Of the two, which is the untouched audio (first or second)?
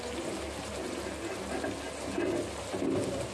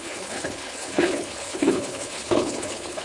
first